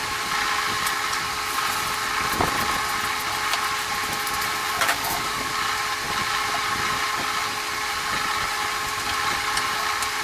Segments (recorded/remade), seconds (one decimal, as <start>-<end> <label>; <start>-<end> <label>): 0.0-4.6 recorded; 4.6-5.5 remade; 5.5-10.2 recorded